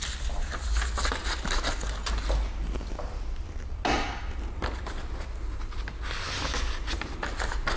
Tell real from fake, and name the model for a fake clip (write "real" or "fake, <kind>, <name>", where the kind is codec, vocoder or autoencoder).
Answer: real